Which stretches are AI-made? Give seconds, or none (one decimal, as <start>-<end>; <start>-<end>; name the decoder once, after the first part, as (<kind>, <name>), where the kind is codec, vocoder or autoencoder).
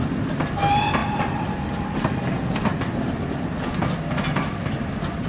none